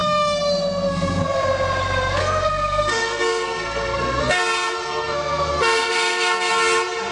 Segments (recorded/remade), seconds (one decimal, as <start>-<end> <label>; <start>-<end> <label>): 0.0-1.2 remade; 1.2-2.2 recorded; 2.2-6.5 remade; 6.5-7.1 recorded